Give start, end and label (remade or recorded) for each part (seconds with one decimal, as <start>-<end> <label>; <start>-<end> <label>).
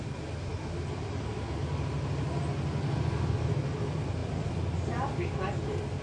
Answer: 0.0-6.0 recorded